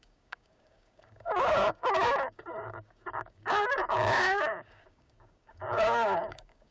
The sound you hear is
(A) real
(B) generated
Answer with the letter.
B